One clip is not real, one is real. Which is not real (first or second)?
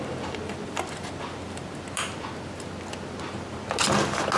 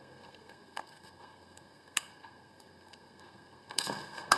second